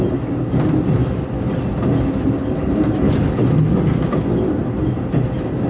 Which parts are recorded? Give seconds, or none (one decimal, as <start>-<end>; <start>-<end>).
0.0-5.7